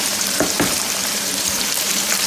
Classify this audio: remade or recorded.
remade